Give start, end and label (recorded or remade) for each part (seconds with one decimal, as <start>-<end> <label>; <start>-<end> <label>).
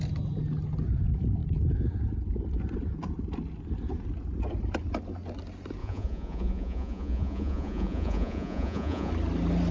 0.0-5.8 recorded; 5.8-9.1 remade; 9.1-9.7 recorded